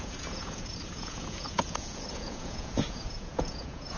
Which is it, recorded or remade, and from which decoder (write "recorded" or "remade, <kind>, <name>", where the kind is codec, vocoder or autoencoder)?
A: remade, vocoder, Vocos